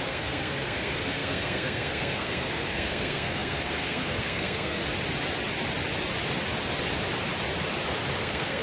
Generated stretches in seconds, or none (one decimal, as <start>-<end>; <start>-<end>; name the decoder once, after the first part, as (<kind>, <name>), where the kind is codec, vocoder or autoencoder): 0.0-4.8 (codec, SNAC); 8.2-8.6